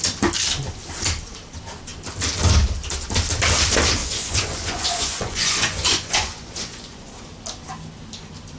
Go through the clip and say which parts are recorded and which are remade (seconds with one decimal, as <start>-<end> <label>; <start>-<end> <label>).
0.0-4.0 recorded; 4.0-7.1 remade; 7.1-8.6 recorded

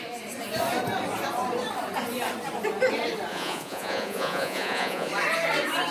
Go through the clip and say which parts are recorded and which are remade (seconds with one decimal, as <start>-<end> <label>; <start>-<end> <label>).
0.0-3.3 recorded; 3.3-5.1 remade; 5.1-5.9 recorded

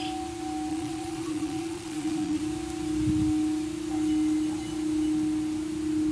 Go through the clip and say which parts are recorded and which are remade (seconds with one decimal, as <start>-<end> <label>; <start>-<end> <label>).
0.0-0.7 recorded; 0.7-2.4 remade; 2.4-6.1 recorded

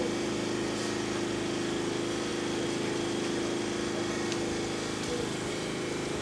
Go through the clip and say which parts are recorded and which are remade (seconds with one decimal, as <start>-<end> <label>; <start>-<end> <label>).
0.0-6.2 recorded

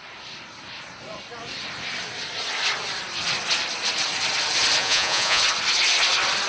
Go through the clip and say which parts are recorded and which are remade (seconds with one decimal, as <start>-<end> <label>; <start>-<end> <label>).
0.0-4.8 recorded; 4.8-5.4 remade; 5.4-6.5 recorded